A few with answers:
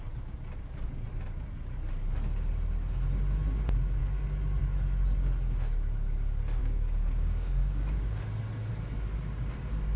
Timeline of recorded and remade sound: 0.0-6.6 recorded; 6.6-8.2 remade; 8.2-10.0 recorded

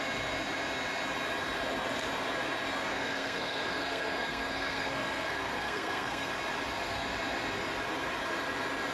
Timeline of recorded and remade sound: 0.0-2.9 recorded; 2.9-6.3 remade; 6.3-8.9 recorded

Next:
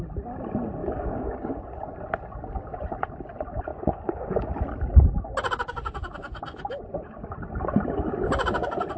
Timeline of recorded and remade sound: 0.0-0.8 recorded; 0.8-1.5 remade; 1.5-3.7 recorded; 3.7-4.5 remade; 4.5-9.0 recorded